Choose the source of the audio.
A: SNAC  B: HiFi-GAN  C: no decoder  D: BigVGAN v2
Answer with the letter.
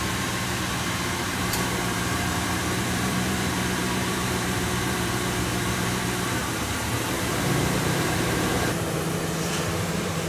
D